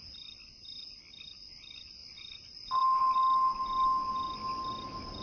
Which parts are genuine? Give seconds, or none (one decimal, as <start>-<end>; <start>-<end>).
0.0-5.2